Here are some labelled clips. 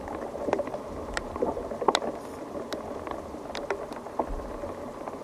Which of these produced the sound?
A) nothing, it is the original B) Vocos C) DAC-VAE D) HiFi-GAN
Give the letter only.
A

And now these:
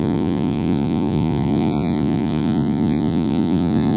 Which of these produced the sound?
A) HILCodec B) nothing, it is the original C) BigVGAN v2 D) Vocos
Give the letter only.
D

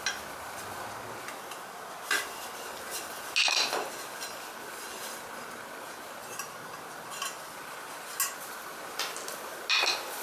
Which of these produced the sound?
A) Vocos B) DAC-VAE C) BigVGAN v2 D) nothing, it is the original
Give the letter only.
D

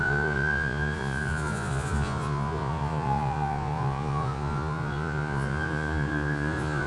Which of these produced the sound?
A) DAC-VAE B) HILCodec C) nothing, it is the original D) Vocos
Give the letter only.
D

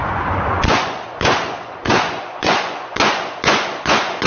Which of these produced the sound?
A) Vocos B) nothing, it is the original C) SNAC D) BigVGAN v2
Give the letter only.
A